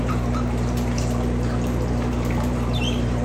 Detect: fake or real fake